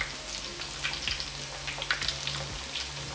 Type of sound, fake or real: real